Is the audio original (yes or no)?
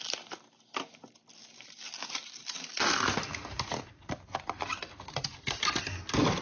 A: yes